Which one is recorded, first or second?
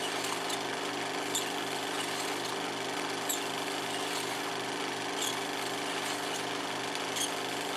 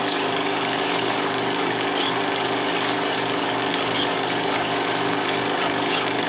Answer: first